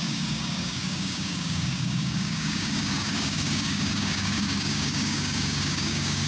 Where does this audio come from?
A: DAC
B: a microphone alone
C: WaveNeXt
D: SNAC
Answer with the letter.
A